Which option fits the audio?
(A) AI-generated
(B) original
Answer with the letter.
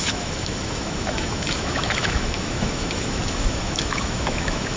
A